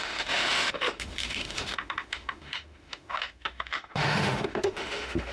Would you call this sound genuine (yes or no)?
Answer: no